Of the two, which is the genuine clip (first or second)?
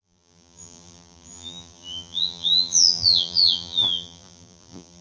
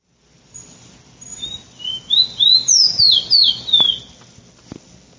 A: second